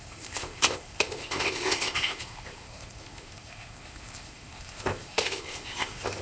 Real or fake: fake